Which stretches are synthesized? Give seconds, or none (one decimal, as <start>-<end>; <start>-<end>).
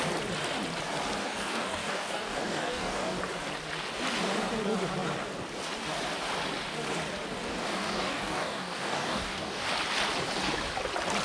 1.2-3.2; 7.4-9.7